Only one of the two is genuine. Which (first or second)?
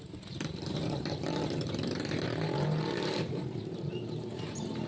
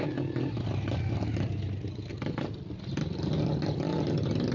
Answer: second